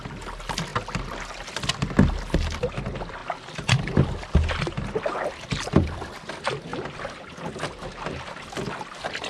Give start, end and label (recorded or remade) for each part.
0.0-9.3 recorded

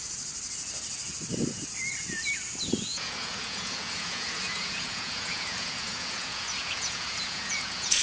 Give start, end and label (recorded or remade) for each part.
0.0-2.9 recorded; 2.9-8.0 remade

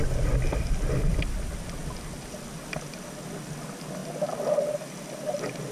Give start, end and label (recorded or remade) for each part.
0.0-5.7 recorded

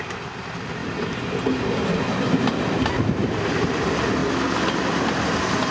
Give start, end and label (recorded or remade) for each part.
0.0-0.8 recorded; 0.8-2.7 remade; 2.7-3.2 recorded; 3.2-3.8 remade; 3.8-5.7 recorded

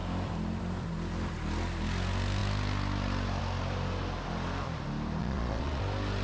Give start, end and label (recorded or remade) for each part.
0.0-5.2 recorded; 5.2-5.8 remade; 5.8-6.2 recorded

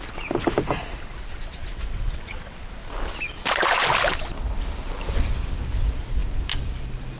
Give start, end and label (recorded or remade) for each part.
0.0-1.6 recorded; 1.6-2.6 remade; 2.6-7.2 recorded